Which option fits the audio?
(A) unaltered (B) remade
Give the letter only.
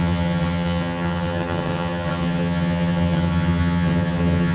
B